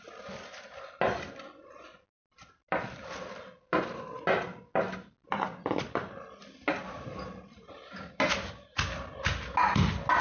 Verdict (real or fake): real